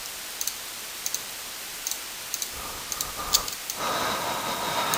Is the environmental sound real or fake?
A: real